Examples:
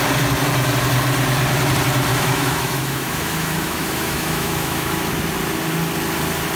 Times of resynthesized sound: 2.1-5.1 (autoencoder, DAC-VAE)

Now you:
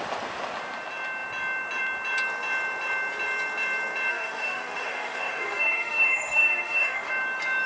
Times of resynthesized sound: 4.1-7.1 (autoencoder, DAC-VAE)

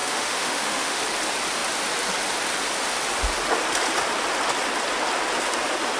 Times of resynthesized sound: 0.0-1.0 (autoencoder, DAC-VAE)

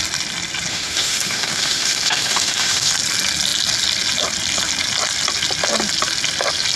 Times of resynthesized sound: 0.7-2.9 (autoencoder, DAC-VAE)

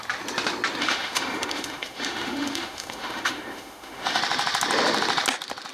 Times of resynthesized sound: 0.8-4.2 (autoencoder, DAC-VAE)

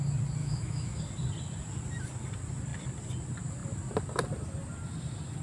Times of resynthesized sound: 0.4-1.0 (autoencoder, DAC-VAE)

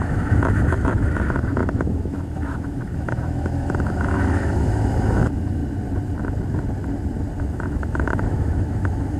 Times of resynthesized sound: 0.0-5.6 (autoencoder, DAC-VAE); 7.4-9.2

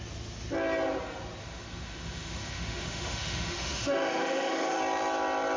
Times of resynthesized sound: 1.4-4.8 (autoencoder, DAC-VAE)